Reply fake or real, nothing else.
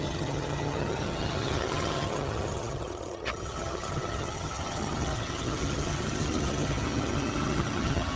fake